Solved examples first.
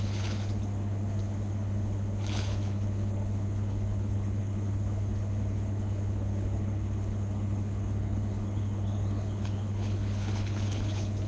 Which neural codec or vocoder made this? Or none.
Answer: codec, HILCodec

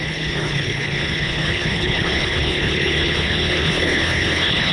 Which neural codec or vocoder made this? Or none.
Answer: codec, HILCodec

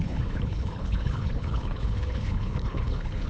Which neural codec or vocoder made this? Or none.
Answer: codec, HILCodec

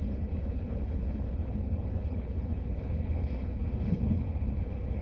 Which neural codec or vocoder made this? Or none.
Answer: codec, HILCodec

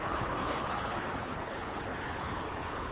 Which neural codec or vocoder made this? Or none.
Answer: codec, HILCodec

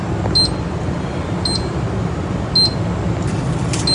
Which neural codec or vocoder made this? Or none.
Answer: none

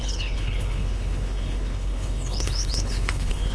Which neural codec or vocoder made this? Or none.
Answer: codec, HILCodec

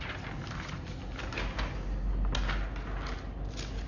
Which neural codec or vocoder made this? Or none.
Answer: none